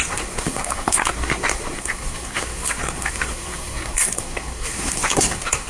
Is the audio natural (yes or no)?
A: no